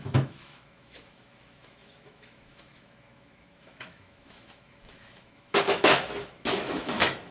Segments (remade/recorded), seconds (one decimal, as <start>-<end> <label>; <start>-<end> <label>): 0.0-7.3 remade